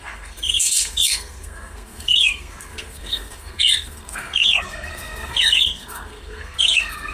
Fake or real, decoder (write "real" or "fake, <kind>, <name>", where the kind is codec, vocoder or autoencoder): fake, codec, SNAC